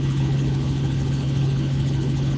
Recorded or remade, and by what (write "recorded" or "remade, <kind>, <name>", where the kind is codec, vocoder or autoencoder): remade, codec, HILCodec